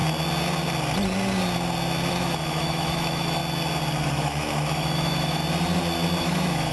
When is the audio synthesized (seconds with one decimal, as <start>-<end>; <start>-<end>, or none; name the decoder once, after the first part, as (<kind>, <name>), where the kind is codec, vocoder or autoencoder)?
2.1-3.4 (autoencoder, DAC-VAE); 4.1-5.4; 6.2-6.7